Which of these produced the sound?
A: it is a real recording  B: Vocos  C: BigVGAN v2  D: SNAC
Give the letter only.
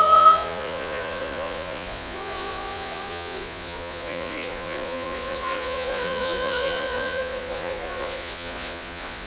B